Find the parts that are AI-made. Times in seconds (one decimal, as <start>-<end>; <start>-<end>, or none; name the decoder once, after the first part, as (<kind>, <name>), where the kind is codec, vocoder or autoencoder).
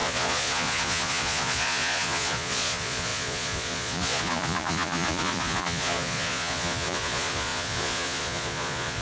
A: 0.0-9.0 (vocoder, Vocos)